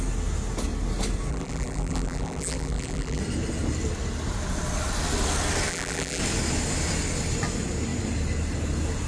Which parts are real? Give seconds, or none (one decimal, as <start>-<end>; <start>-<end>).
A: 0.0-1.3; 3.2-5.7; 6.2-9.1